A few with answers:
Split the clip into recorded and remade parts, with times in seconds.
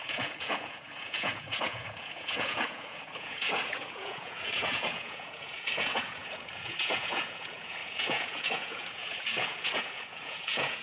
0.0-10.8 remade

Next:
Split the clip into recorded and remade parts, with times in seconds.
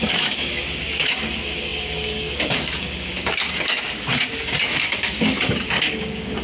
0.0-6.4 remade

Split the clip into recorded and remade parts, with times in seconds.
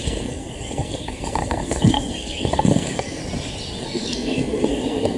0.0-3.2 remade; 3.2-3.8 recorded; 3.8-5.2 remade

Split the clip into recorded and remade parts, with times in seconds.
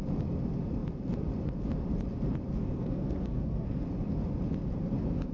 0.0-2.6 recorded; 2.6-3.8 remade; 3.8-5.3 recorded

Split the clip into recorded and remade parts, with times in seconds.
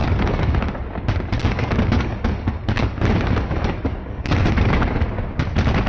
0.0-0.8 remade; 0.8-1.4 recorded; 1.4-4.9 remade; 4.9-5.9 recorded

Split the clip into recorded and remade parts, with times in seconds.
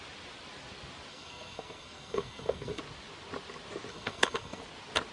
0.0-1.1 recorded; 1.1-2.8 remade; 2.8-3.9 recorded; 3.9-4.6 remade; 4.6-5.1 recorded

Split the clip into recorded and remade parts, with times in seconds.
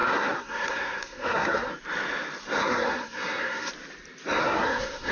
0.0-1.7 remade; 1.7-2.6 recorded; 2.6-3.7 remade; 3.7-4.4 recorded; 4.4-5.1 remade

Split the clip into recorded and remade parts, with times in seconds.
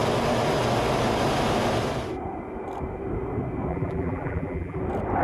0.0-3.7 recorded; 3.7-4.8 remade; 4.8-5.2 recorded